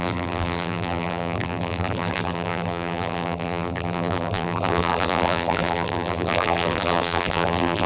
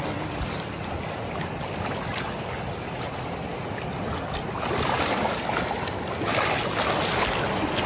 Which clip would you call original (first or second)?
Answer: second